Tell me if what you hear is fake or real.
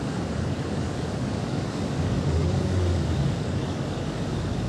fake